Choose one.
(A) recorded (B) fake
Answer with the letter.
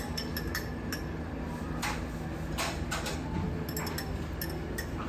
A